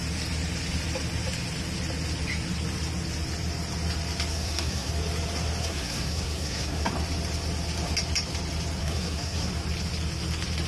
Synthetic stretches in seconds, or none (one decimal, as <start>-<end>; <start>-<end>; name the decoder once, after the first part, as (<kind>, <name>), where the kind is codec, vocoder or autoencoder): 4.3-4.9 (codec, SNAC); 5.6-6.9; 8.8-9.5